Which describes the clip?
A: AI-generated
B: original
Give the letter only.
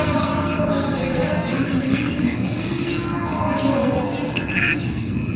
A